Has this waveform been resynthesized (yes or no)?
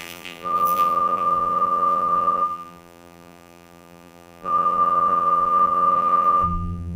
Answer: yes